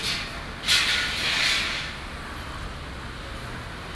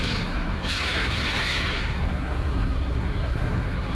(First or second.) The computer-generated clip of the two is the second